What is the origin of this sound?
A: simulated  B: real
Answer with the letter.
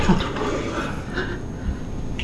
B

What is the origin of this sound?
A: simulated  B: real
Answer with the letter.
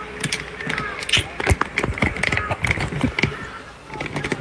B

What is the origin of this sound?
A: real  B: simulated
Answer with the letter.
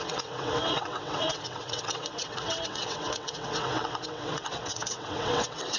B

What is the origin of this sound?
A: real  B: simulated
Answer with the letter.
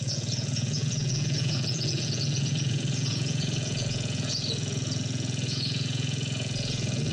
B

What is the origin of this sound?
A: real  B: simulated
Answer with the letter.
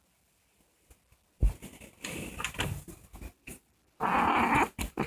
A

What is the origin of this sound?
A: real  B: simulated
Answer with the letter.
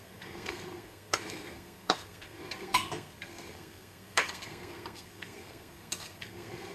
B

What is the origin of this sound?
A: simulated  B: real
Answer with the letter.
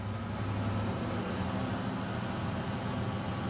B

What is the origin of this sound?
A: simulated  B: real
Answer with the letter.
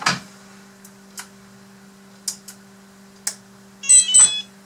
B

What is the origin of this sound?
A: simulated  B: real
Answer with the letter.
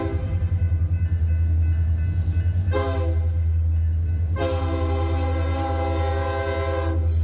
B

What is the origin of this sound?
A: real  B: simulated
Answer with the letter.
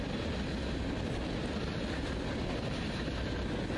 A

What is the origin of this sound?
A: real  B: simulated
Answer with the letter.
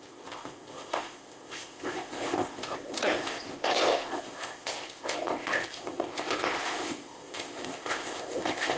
B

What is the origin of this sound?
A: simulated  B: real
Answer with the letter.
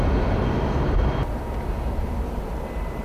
B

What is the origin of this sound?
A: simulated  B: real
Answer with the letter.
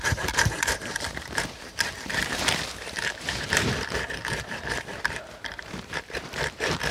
A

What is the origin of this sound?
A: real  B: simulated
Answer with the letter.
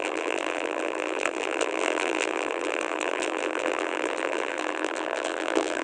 B